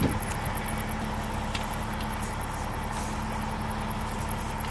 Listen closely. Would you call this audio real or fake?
real